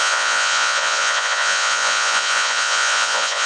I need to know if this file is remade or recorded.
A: remade